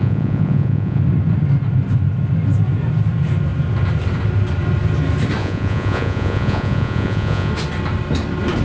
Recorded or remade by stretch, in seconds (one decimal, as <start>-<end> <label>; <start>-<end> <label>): 0.0-1.0 remade; 1.0-5.4 recorded; 5.4-7.5 remade; 7.5-8.6 recorded